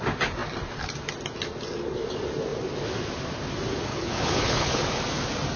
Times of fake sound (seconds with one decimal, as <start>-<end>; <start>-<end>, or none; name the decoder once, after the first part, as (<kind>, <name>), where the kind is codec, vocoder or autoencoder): 3.9-4.8 (codec, HILCodec)